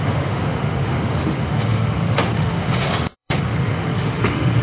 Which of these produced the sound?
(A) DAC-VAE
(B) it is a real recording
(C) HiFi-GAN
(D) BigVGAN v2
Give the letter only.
A